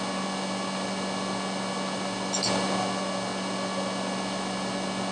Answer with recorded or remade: recorded